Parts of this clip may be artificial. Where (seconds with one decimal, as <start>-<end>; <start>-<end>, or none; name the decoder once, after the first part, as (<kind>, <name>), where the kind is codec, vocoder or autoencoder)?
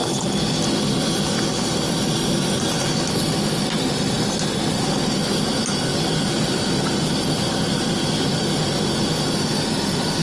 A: none